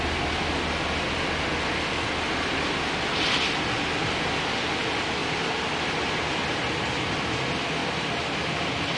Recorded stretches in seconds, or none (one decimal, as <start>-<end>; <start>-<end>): 0.0-7.8